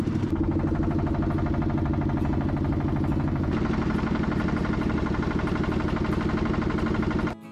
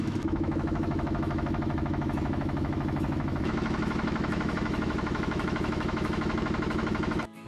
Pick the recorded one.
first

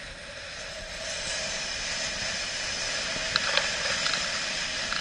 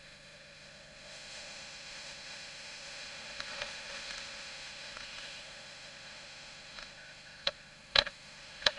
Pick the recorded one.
first